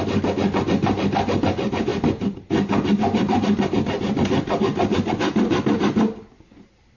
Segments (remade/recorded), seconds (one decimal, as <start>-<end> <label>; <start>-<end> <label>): 0.0-7.0 recorded